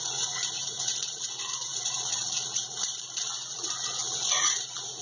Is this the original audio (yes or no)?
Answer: no